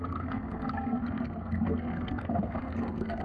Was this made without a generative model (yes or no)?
no